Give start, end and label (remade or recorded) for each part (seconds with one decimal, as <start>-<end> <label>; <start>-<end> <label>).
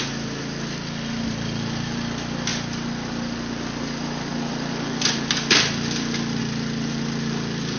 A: 0.0-7.8 recorded